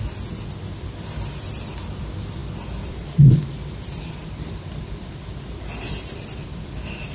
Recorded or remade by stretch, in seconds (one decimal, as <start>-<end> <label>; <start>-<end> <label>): 0.0-7.1 remade